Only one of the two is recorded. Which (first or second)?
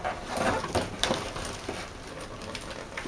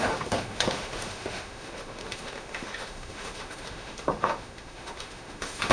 first